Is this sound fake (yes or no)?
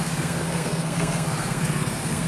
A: yes